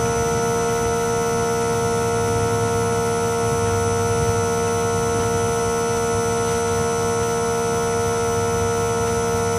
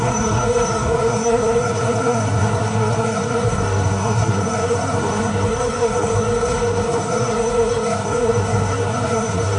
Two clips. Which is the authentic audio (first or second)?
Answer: first